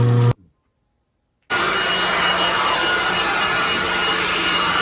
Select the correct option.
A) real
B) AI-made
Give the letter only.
A